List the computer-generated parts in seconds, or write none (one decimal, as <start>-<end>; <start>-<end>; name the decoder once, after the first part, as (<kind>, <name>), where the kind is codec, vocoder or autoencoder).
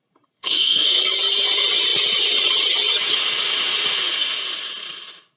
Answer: 0.4-1.0 (codec, SNAC)